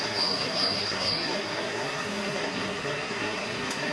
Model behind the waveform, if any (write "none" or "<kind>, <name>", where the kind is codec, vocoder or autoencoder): codec, SNAC